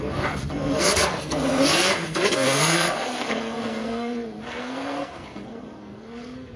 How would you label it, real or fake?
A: fake